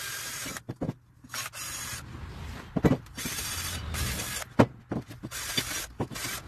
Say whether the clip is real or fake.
real